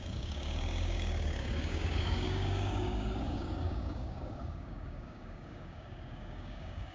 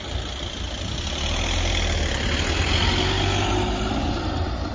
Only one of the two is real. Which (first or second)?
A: second